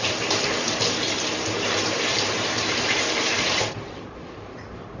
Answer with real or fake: fake